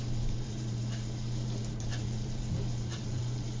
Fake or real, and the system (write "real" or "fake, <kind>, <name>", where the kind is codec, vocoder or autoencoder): fake, vocoder, BigVGAN v2